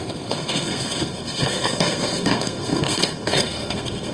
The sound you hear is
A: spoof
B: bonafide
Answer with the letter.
A